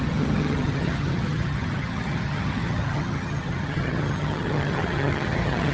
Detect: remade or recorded remade